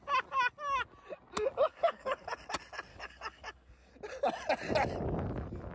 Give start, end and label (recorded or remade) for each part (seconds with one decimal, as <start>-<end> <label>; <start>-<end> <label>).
0.0-1.7 recorded; 1.7-2.3 remade; 2.3-2.9 recorded; 2.9-3.9 remade; 3.9-5.7 recorded